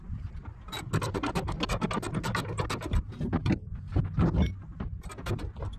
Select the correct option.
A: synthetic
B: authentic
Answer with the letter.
B